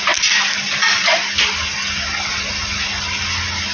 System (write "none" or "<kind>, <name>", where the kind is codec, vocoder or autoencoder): none